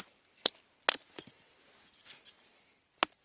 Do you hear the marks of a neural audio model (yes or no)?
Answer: no